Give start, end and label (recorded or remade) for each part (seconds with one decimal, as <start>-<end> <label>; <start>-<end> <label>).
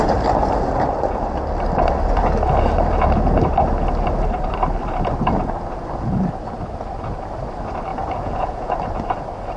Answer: 0.0-7.9 recorded; 7.9-8.7 remade; 8.7-9.6 recorded